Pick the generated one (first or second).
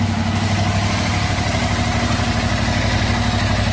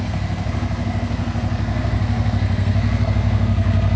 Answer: second